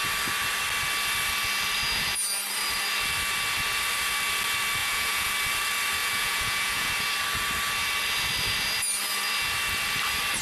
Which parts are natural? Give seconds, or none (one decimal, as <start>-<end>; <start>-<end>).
0.0-4.8; 5.3-6.0; 6.9-10.4